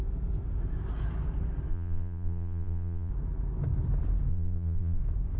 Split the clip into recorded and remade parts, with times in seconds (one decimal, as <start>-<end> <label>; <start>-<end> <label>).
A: 0.0-1.7 recorded; 1.7-3.1 remade; 3.1-4.3 recorded; 4.3-5.0 remade; 5.0-5.4 recorded